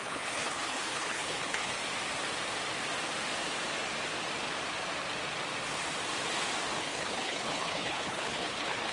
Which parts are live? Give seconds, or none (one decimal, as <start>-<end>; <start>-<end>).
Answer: 1.8-6.8

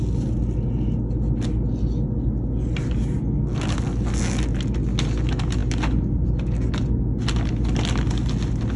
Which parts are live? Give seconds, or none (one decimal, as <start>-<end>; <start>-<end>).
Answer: 0.0-8.8

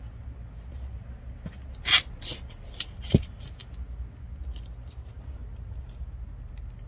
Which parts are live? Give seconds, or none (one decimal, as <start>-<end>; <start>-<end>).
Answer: 0.0-6.9

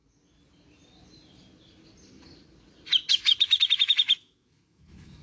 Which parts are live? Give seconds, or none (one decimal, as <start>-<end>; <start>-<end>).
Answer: 0.0-3.1

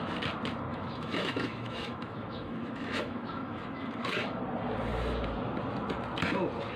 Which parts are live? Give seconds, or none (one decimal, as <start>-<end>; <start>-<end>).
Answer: 0.0-0.7; 4.4-6.8

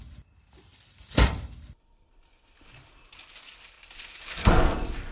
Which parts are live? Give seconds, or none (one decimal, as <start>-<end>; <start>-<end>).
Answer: 0.0-0.7; 2.0-5.1